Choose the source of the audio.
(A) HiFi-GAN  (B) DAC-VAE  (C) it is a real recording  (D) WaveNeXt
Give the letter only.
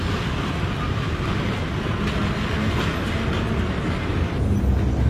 C